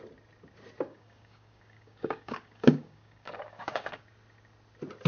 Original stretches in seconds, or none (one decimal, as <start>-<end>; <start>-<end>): 0.0-0.9; 4.0-5.1